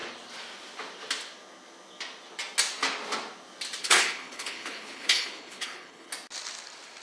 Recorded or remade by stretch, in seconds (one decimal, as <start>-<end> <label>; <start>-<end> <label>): 0.0-3.8 recorded; 3.8-6.1 remade; 6.1-7.0 recorded